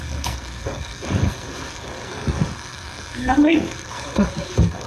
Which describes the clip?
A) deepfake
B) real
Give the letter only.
A